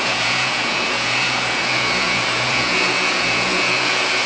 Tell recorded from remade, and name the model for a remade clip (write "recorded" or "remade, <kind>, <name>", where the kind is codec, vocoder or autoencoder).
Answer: remade, vocoder, Vocos